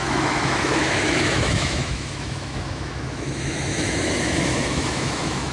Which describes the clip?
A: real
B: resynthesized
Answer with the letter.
B